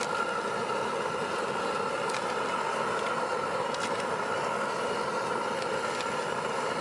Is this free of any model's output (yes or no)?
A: yes